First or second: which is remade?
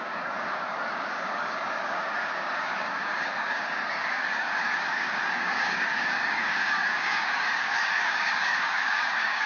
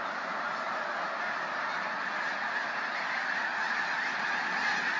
first